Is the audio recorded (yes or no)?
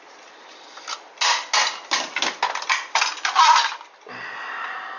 yes